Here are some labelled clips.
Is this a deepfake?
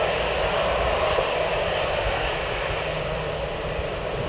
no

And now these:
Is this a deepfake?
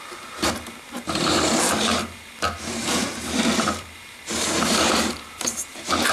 yes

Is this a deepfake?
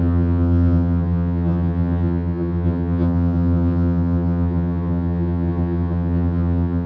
yes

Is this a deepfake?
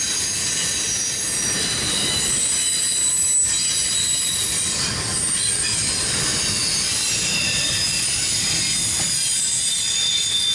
no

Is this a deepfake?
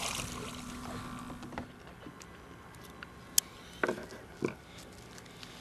no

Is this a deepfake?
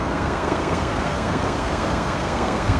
yes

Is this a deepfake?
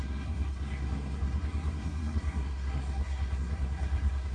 yes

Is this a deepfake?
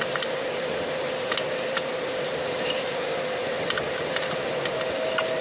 no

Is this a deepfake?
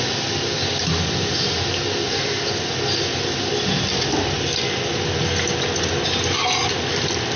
no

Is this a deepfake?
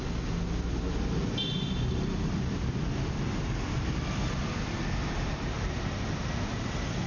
yes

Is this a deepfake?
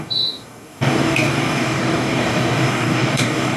yes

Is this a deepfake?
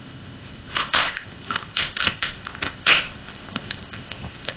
yes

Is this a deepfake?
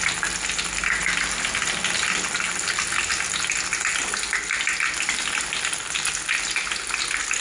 no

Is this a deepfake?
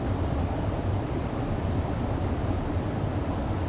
no